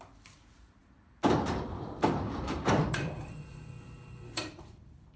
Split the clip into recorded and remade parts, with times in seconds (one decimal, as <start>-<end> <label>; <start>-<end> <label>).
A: 0.0-5.2 remade